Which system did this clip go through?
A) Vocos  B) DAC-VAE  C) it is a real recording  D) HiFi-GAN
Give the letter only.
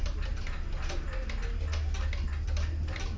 C